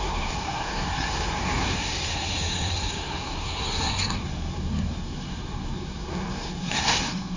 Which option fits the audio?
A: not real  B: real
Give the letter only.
A